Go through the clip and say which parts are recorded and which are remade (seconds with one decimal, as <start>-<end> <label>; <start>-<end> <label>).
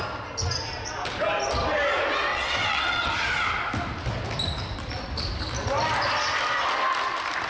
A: 0.0-2.3 recorded; 2.3-3.1 remade; 3.1-7.5 recorded